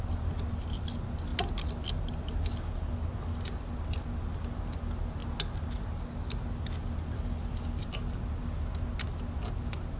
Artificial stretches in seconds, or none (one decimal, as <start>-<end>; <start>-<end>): none